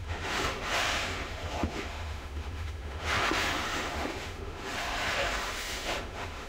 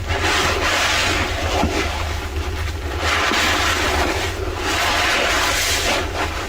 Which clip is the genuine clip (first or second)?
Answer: second